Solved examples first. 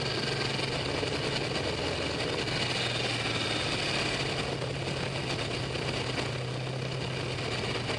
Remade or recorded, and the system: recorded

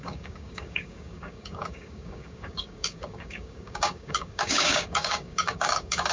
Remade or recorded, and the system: remade, codec, DAC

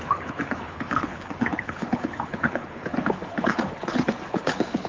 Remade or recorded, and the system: remade, codec, HILCodec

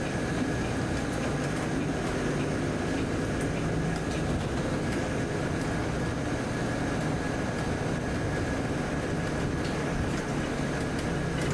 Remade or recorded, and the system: recorded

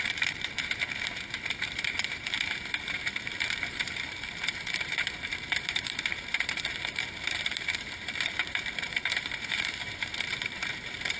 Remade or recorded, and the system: remade, vocoder, BigVGAN v2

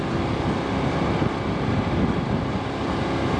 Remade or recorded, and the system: recorded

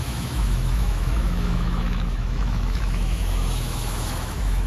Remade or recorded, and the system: remade, autoencoder, DAC-VAE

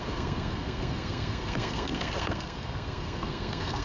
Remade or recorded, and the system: remade, codec, SNAC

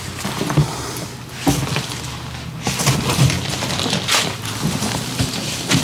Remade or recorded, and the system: recorded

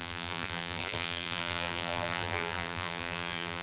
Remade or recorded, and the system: remade, vocoder, BigVGAN v2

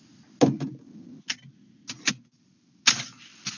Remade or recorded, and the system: recorded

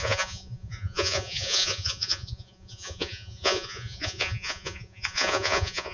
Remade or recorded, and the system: remade, vocoder, Vocos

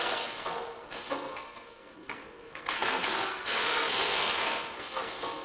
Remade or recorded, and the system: remade, codec, SNAC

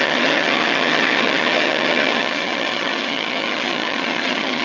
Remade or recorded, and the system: remade, vocoder, HiFi-GAN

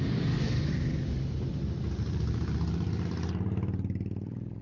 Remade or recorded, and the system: recorded